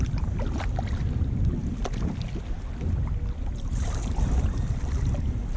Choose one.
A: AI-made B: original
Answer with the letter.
B